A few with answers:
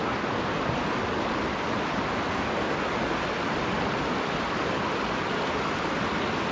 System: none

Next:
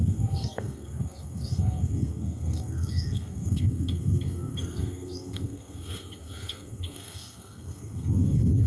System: codec, SNAC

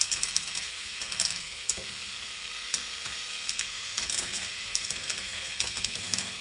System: codec, SNAC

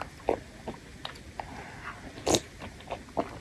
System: none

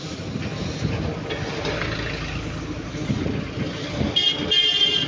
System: none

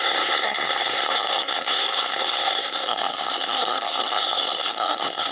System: codec, SNAC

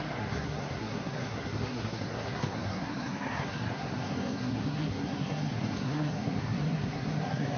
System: codec, SNAC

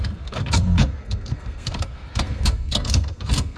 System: codec, SNAC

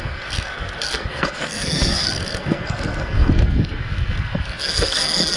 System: codec, SNAC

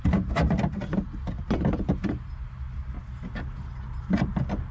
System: none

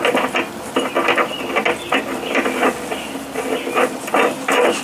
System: none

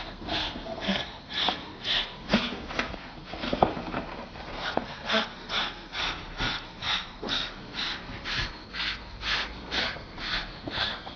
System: codec, SNAC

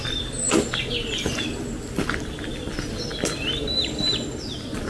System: none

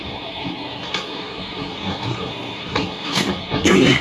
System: codec, SNAC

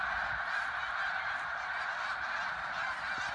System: none